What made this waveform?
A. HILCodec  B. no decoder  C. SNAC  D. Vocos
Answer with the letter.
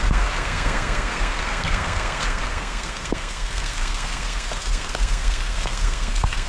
C